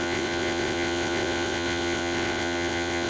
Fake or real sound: fake